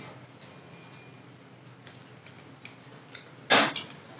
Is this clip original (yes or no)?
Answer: yes